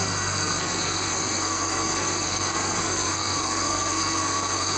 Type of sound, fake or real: fake